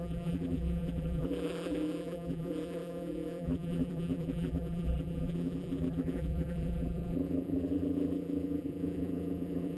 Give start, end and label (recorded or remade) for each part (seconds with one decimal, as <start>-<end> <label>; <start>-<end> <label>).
0.0-9.8 remade